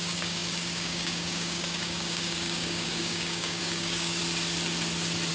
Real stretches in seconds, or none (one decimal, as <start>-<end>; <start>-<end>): 4.2-5.3